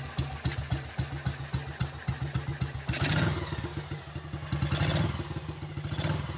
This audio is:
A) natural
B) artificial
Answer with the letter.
A